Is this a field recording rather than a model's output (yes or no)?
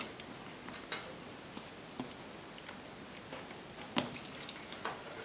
yes